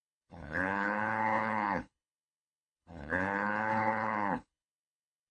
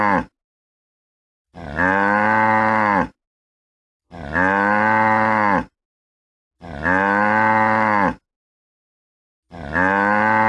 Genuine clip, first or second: second